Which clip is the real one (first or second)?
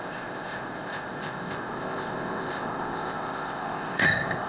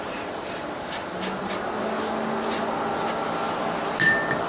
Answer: second